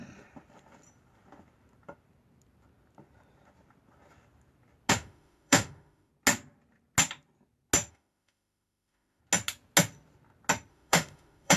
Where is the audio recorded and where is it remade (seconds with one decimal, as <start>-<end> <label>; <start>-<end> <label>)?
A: 0.0-4.9 recorded; 4.9-6.1 remade; 6.1-7.9 recorded; 7.9-9.2 remade; 9.2-10.7 recorded; 10.7-11.6 remade